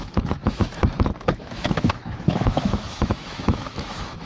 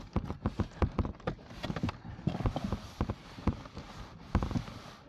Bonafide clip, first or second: second